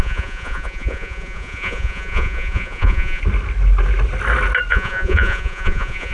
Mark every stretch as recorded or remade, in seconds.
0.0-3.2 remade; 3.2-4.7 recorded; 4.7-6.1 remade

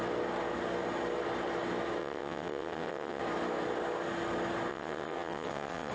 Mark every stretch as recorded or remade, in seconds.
0.0-2.0 recorded; 2.0-3.2 remade; 3.2-4.7 recorded; 4.7-5.9 remade

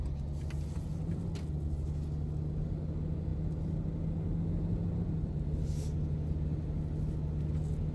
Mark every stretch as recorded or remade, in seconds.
0.0-7.9 recorded